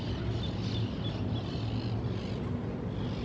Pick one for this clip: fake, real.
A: real